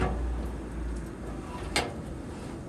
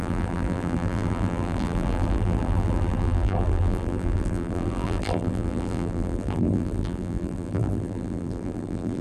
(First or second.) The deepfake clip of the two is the second